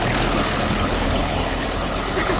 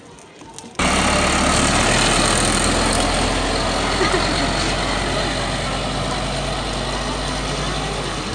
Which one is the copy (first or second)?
first